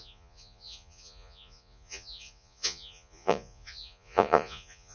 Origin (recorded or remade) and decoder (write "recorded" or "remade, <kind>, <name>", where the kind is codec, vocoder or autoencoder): remade, vocoder, Vocos